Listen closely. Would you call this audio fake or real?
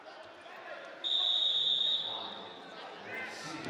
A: real